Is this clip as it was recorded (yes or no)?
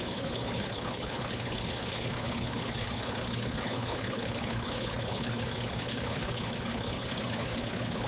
no